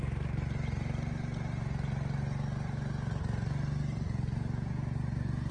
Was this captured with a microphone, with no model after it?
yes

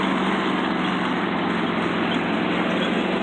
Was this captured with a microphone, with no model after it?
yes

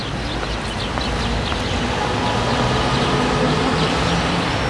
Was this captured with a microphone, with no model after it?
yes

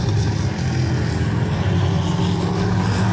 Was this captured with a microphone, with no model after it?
yes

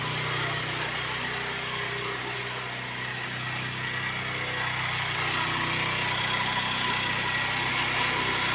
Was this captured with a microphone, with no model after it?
yes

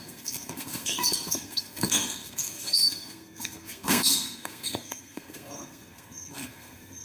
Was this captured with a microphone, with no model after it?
no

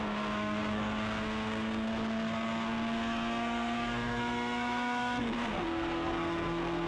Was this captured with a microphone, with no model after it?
no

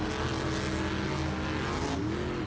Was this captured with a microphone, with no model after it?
yes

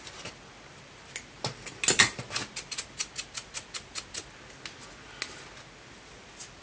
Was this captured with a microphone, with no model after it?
yes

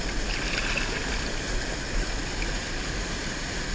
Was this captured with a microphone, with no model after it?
yes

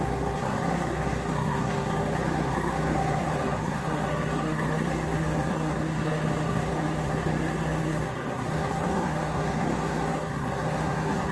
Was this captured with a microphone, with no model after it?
no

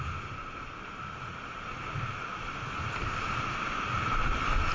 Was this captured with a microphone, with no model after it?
yes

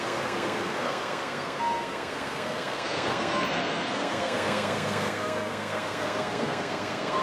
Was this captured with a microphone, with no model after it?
no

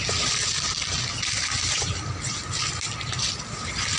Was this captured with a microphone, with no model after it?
yes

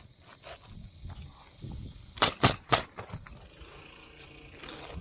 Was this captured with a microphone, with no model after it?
yes